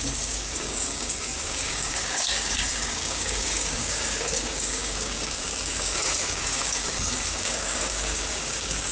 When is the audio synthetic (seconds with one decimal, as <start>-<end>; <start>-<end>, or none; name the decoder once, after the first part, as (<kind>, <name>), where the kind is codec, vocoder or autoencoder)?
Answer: 0.0-8.9 (codec, DAC)